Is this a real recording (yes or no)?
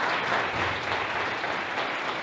yes